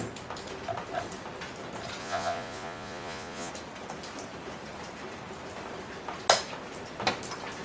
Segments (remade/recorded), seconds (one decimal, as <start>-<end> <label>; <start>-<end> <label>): 0.0-2.0 recorded; 2.0-3.5 remade; 3.5-7.6 recorded

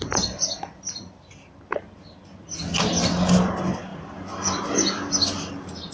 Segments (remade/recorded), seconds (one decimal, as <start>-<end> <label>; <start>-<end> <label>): 0.0-5.9 recorded

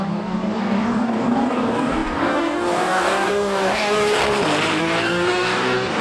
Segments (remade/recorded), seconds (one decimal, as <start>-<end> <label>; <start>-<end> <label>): 0.0-4.2 remade; 4.2-4.8 recorded; 4.8-6.0 remade

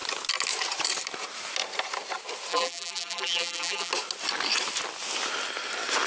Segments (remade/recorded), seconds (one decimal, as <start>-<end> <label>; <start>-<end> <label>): 0.0-2.5 recorded; 2.5-3.9 remade; 3.9-6.1 recorded

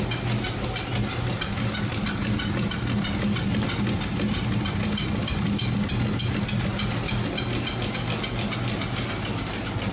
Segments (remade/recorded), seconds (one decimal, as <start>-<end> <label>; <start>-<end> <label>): 0.0-9.9 recorded

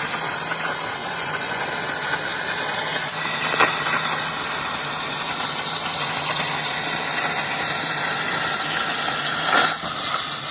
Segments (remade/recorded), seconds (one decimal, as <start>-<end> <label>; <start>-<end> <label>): 0.0-1.0 recorded; 1.0-1.6 remade; 1.6-10.5 recorded

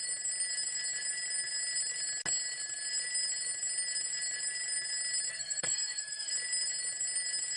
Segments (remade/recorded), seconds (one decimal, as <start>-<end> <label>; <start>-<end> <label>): 0.0-5.3 recorded; 5.3-6.3 remade; 6.3-7.6 recorded